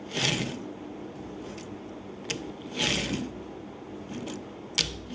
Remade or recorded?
recorded